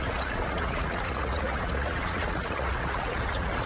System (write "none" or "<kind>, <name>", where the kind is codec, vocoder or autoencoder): vocoder, Vocos